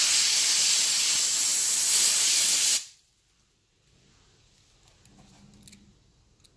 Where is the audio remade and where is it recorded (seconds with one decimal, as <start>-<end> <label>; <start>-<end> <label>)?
0.0-6.6 recorded